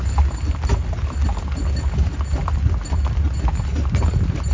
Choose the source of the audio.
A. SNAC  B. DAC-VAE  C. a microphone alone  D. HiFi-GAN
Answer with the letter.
C